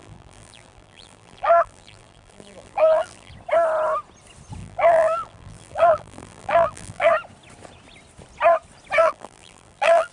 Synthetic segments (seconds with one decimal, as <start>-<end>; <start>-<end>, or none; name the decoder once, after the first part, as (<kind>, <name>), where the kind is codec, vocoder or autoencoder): 0.0-3.3 (vocoder, BigVGAN v2); 4.6-7.1; 9.0-10.1